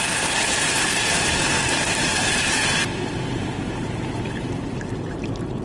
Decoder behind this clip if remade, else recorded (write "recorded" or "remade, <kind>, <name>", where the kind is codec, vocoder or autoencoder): remade, vocoder, BigVGAN v2